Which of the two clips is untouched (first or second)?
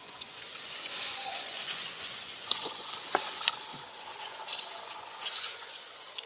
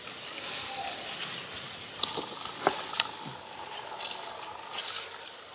second